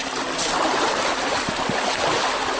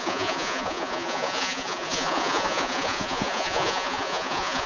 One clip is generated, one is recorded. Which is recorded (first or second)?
first